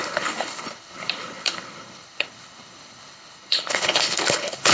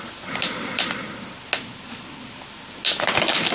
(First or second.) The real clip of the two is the second